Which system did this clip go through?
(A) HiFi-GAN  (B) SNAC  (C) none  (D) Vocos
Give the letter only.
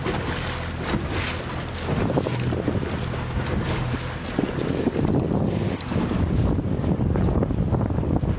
C